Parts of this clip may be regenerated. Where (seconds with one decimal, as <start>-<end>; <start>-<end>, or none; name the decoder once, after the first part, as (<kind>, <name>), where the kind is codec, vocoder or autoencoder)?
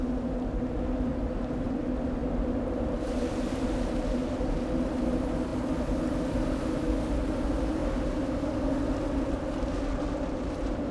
1.1-1.8 (vocoder, BigVGAN v2); 2.2-3.0